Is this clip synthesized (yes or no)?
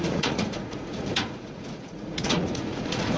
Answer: yes